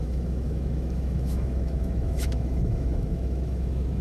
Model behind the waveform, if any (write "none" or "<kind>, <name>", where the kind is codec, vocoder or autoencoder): autoencoder, DAC-VAE